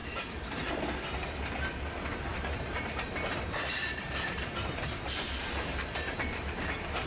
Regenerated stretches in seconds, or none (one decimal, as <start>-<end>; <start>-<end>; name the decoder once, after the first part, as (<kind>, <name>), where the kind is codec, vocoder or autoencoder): 0.0-0.7 (vocoder, BigVGAN v2); 2.3-6.6